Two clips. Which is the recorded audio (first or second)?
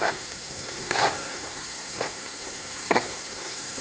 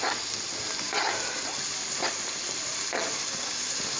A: second